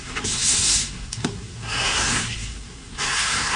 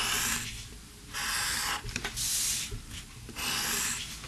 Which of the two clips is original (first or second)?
second